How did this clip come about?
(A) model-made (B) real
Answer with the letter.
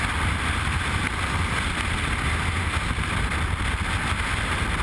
B